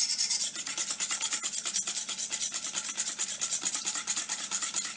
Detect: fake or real real